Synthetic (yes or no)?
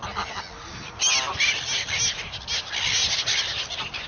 no